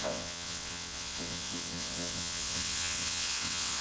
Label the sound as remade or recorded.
remade